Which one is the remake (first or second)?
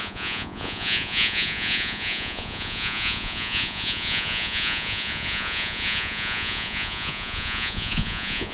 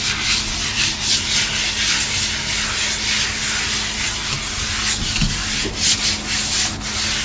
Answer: first